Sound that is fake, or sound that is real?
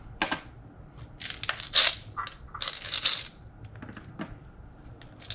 real